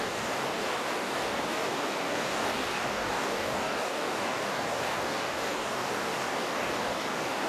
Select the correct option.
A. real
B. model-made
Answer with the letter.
B